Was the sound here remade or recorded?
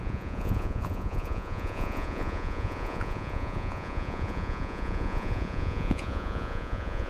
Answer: remade